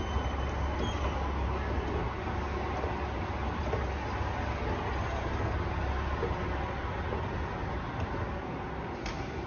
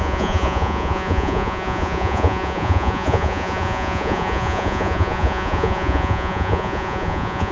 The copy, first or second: second